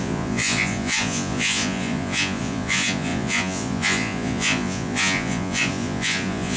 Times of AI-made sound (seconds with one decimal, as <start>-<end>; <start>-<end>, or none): 0.0-6.6